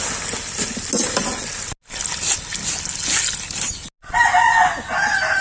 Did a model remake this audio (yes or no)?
no